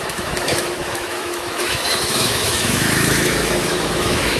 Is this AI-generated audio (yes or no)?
yes